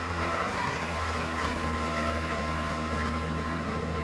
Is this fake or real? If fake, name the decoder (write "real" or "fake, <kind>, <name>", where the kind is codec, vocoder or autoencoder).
fake, codec, SNAC